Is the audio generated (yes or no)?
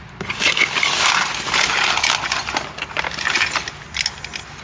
no